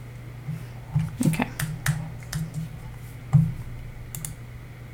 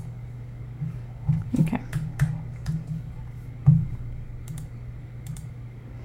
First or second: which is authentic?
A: first